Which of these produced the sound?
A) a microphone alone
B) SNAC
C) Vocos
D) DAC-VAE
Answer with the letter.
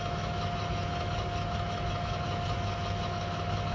D